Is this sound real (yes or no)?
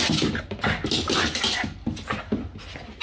yes